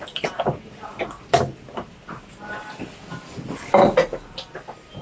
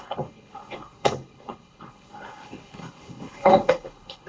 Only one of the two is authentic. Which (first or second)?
first